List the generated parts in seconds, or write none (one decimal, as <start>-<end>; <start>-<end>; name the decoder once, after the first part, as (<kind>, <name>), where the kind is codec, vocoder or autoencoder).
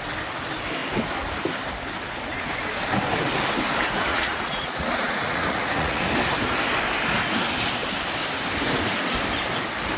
4.1-6.0 (vocoder, Vocos)